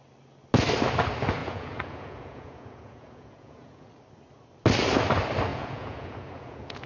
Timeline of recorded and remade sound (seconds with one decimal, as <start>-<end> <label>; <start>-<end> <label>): 0.0-1.4 recorded; 1.4-3.9 remade; 3.9-5.5 recorded; 5.5-6.9 remade